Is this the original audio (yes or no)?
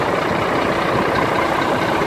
no